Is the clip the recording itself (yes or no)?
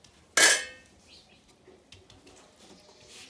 yes